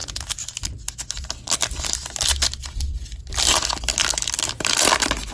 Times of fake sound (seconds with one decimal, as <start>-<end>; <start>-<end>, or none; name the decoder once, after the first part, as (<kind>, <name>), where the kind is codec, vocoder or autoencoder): none